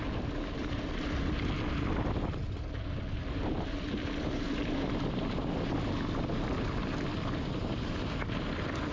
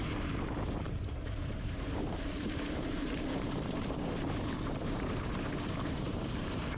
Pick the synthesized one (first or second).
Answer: second